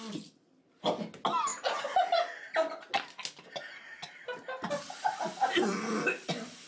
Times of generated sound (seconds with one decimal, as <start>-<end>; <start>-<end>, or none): none